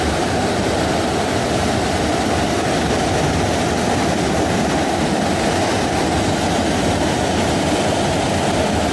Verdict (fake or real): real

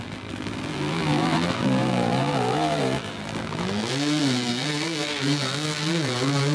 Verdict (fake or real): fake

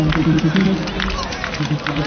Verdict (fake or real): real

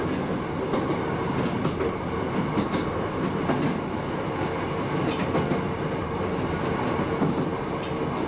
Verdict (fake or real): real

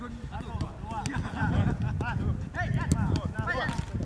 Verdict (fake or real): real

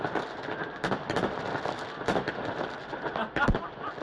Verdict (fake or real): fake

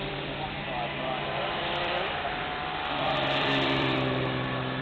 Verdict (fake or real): fake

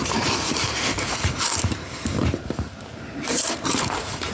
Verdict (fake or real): fake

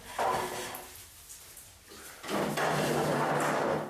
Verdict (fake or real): real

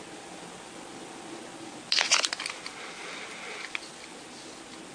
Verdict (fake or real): real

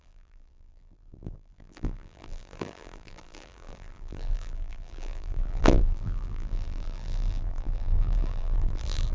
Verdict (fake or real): fake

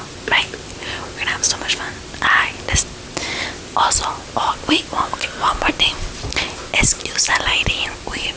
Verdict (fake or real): real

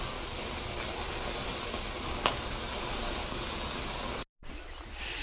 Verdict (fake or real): real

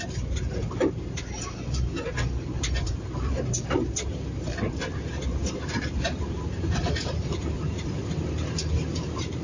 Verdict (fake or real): fake